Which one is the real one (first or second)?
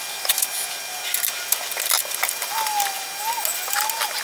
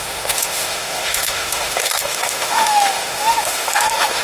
first